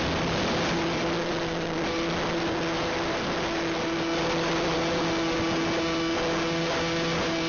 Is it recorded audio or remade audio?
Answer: recorded